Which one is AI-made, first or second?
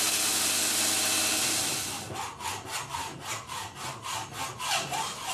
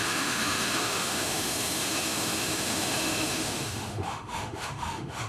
second